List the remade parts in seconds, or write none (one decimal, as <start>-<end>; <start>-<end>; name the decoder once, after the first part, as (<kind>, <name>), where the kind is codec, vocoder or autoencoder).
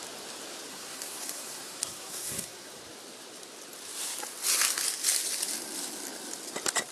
0.7-2.8 (codec, SNAC)